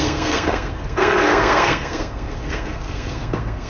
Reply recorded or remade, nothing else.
remade